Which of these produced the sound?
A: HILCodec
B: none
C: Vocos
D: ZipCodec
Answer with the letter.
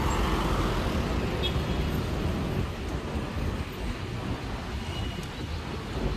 B